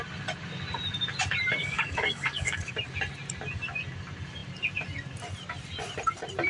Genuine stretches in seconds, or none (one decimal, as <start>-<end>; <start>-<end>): 0.0-1.6; 2.7-6.5